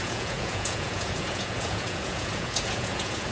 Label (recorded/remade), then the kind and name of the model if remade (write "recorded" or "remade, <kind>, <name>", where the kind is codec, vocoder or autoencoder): remade, vocoder, Vocos